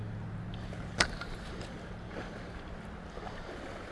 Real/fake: real